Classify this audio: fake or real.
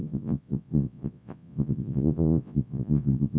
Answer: fake